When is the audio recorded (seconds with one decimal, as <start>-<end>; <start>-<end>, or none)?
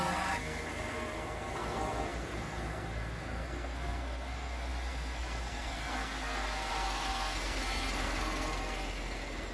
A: none